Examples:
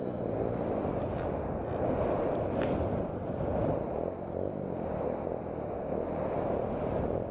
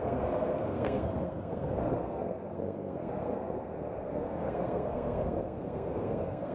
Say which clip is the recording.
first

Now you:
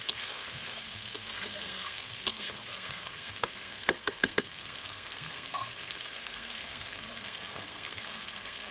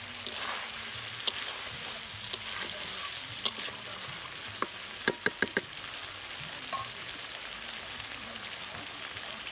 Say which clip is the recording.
second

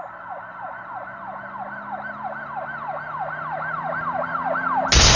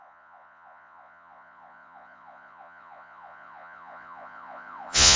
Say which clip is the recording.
first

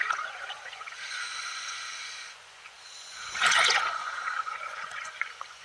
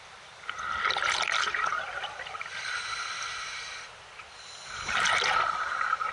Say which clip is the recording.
second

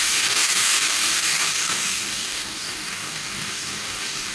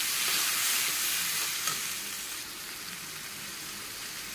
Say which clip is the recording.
second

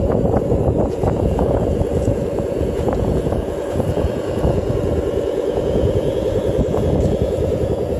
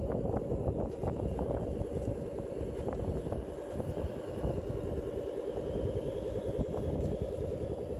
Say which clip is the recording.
second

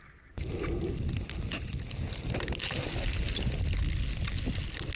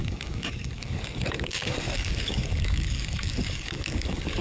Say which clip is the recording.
first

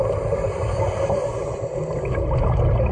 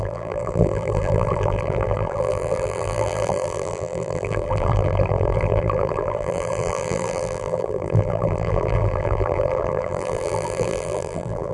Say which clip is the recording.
first